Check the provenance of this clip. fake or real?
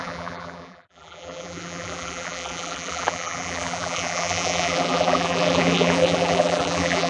fake